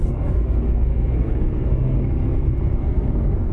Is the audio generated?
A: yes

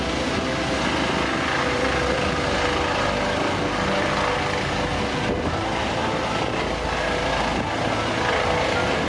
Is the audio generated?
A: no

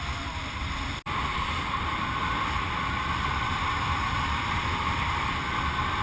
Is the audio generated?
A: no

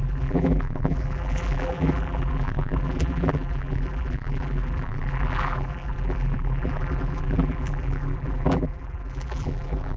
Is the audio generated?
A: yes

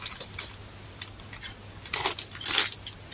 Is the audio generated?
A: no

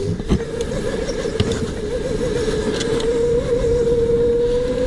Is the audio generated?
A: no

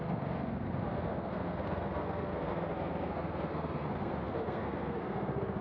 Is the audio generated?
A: yes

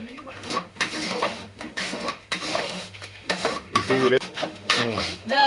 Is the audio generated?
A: yes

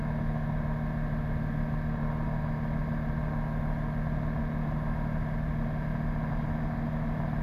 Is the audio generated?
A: no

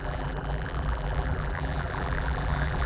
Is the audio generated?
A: yes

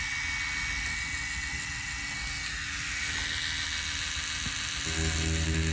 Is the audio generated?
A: no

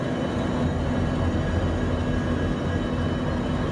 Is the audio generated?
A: no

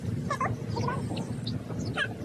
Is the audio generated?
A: no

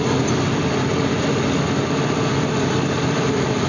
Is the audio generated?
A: yes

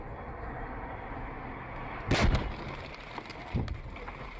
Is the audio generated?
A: no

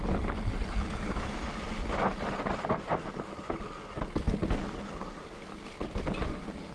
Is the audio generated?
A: no